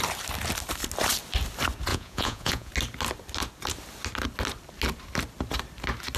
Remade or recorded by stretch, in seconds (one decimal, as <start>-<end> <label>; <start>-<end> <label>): 0.0-1.9 recorded; 1.9-2.7 remade; 2.7-6.2 recorded